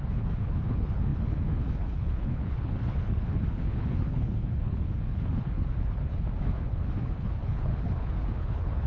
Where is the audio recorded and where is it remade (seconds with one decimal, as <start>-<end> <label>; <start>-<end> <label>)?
0.0-8.9 remade